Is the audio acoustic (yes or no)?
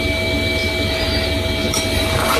yes